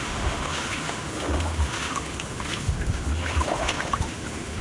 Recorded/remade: remade